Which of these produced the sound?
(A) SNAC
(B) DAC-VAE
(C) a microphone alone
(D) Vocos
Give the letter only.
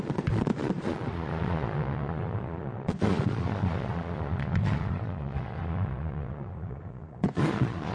D